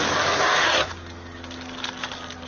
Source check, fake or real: real